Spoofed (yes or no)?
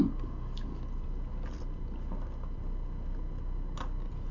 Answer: no